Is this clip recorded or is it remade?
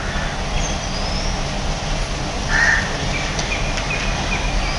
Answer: recorded